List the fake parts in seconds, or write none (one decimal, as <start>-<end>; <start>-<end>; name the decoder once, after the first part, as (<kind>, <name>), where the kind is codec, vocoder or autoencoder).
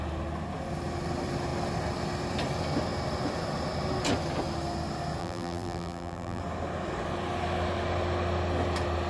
5.2-6.4 (vocoder, BigVGAN v2)